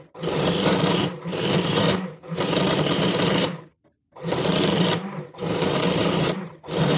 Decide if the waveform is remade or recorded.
remade